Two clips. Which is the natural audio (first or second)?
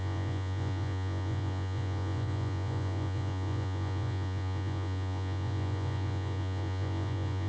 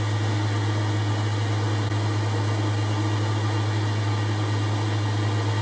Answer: second